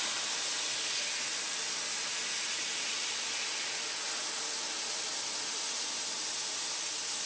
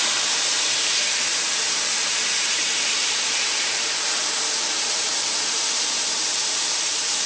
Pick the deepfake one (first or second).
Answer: second